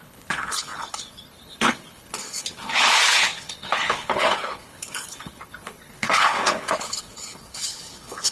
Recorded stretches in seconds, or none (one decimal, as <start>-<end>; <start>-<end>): none